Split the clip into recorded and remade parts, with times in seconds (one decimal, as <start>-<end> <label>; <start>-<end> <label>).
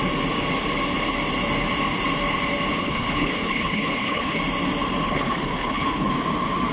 0.0-2.8 recorded; 2.8-4.4 remade; 4.4-5.0 recorded; 5.0-6.1 remade; 6.1-6.7 recorded